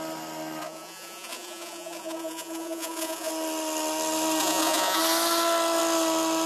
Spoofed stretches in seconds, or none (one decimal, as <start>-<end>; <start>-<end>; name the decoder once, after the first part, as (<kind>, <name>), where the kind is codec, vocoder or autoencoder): 0.6-3.3 (vocoder, Vocos); 4.4-5.0